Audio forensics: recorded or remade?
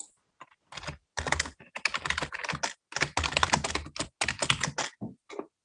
recorded